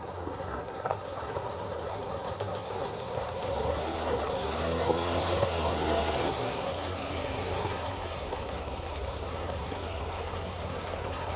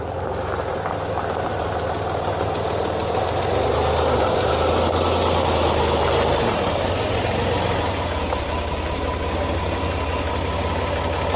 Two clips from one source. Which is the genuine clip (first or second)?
second